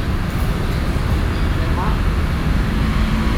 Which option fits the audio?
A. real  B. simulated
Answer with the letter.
A